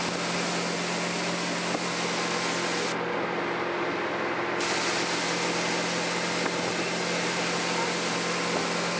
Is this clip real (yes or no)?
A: yes